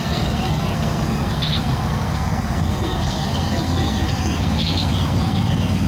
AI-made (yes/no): yes